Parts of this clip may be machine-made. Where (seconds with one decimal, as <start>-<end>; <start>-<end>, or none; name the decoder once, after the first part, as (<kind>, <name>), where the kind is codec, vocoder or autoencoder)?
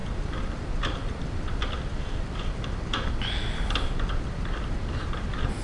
none